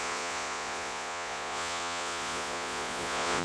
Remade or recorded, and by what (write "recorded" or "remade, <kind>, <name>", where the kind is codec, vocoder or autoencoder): remade, vocoder, Vocos